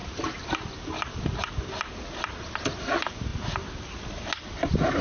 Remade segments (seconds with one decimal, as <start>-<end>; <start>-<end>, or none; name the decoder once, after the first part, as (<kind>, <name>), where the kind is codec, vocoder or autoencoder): none